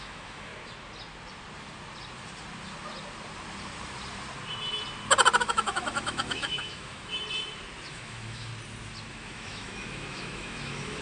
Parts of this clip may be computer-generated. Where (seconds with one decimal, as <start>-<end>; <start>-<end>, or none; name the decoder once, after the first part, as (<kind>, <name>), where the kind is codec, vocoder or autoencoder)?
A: 0.0-0.5 (autoencoder, DAC-VAE); 5.4-7.1; 7.9-8.5; 9.1-11.0